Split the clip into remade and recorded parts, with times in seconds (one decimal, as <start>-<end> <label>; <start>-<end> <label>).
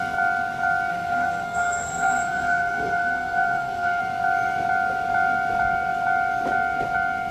0.0-0.9 recorded; 0.9-4.0 remade; 4.0-7.3 recorded